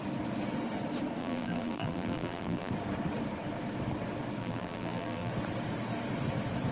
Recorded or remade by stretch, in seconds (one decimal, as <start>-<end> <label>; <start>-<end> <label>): 0.0-1.2 recorded; 1.2-2.7 remade; 2.7-4.4 recorded; 4.4-5.3 remade; 5.3-6.7 recorded